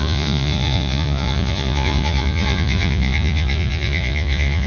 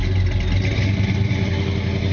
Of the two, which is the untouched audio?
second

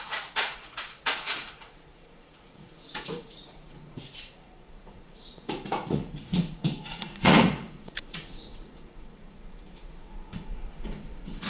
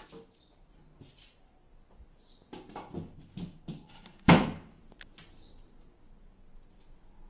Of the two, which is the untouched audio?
second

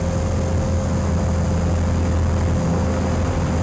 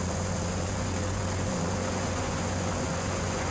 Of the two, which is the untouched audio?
first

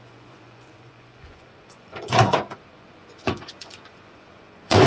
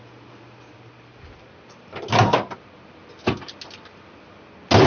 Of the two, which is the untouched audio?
second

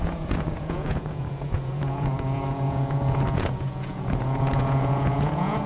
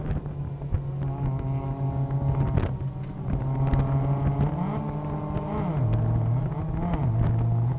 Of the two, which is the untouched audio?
second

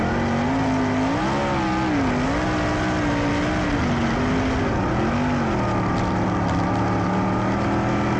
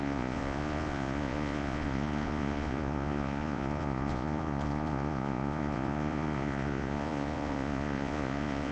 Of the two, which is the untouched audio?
first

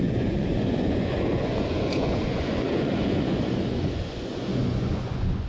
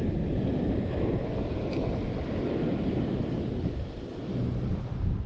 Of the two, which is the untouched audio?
second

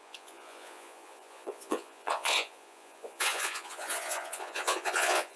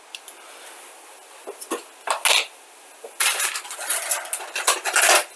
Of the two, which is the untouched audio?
second